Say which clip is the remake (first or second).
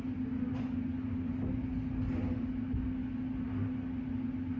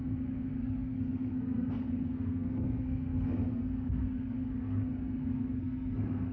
second